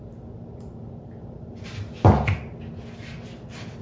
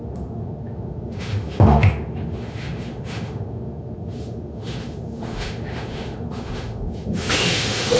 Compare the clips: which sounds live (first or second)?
first